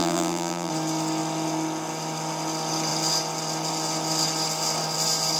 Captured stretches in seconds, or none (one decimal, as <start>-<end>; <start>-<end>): 0.7-5.4